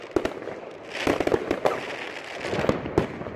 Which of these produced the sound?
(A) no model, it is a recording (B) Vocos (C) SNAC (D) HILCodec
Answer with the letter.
A